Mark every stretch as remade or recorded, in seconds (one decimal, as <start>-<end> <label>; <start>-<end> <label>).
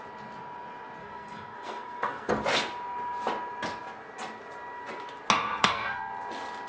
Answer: 0.0-1.0 recorded; 1.0-2.3 remade; 2.3-5.6 recorded; 5.6-6.1 remade; 6.1-6.7 recorded